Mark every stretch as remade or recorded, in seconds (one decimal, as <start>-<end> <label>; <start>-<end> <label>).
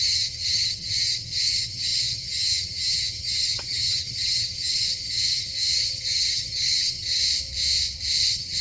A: 0.0-7.2 remade; 7.2-8.2 recorded; 8.2-8.6 remade